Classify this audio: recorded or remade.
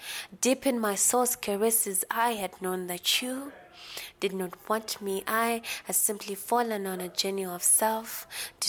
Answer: recorded